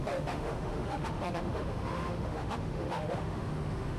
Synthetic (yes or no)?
yes